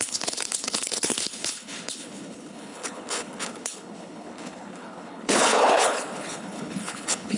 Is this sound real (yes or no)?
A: no